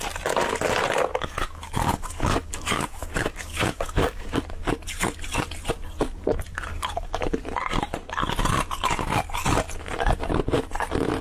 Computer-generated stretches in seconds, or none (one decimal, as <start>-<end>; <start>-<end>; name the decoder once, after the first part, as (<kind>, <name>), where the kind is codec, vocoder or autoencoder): 1.1-4.4 (codec, DAC); 6.7-7.4